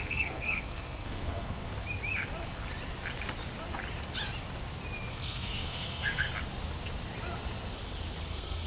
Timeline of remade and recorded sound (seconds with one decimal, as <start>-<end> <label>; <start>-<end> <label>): 0.0-1.6 remade; 1.6-5.1 recorded; 5.1-6.3 remade; 6.3-8.2 recorded; 8.2-8.7 remade